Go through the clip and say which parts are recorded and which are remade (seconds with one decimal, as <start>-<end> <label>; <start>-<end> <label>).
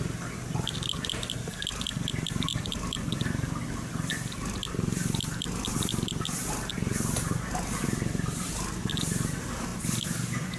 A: 0.0-2.5 recorded; 2.5-3.6 remade; 3.6-10.6 recorded